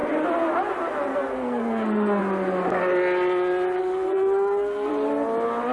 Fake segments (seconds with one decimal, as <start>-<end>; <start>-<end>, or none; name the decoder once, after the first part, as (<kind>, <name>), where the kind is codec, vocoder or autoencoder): 1.1-2.2 (codec, SNAC); 3.8-4.9